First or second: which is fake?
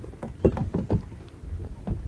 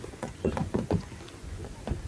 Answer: second